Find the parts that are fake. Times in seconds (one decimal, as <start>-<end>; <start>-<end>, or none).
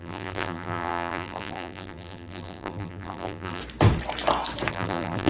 0.0-3.6; 4.7-5.3